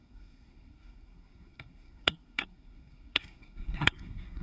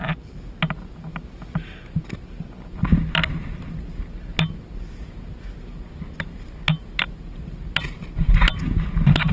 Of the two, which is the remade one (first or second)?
first